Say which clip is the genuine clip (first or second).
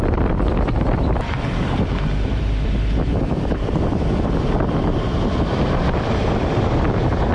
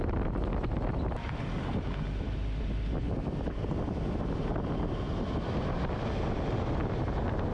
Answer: second